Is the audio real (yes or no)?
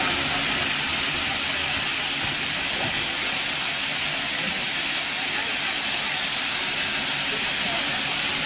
yes